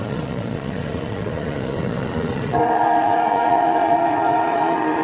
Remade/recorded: remade